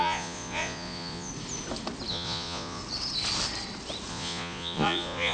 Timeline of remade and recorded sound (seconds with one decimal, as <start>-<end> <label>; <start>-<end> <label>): 0.0-1.3 remade; 1.3-2.1 recorded; 2.1-2.8 remade; 2.8-4.1 recorded; 4.1-5.3 remade

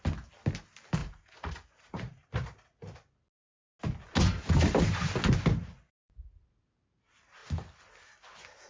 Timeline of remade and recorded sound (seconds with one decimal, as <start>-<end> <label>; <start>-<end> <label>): 0.0-1.0 recorded; 1.0-2.3 remade; 2.3-8.7 recorded

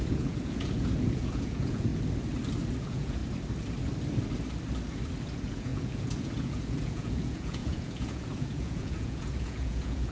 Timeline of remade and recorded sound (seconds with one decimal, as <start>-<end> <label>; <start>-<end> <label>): 0.0-1.9 remade; 1.9-2.8 recorded; 2.8-3.2 remade; 3.2-5.2 recorded; 5.2-10.1 remade

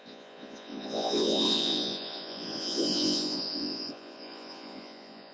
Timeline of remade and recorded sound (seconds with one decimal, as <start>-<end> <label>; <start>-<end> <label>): 0.0-5.3 remade

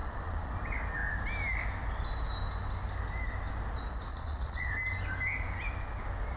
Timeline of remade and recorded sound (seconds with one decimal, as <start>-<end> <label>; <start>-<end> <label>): 0.0-0.5 remade; 0.5-4.1 recorded; 4.1-4.7 remade; 4.7-6.4 recorded

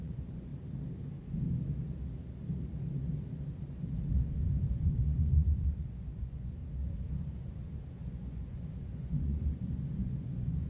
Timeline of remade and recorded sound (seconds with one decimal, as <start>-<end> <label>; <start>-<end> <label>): 0.0-0.5 remade; 0.5-4.7 recorded; 4.7-6.6 remade; 6.6-7.9 recorded; 7.9-10.7 remade

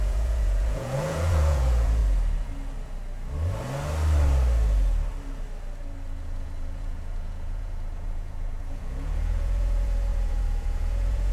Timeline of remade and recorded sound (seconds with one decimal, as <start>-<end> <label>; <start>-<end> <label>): 0.0-2.0 remade; 2.0-6.2 recorded; 6.2-11.3 remade